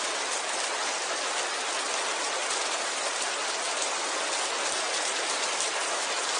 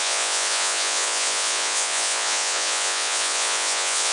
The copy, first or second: second